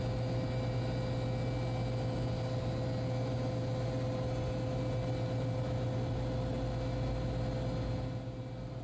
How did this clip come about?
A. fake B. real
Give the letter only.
B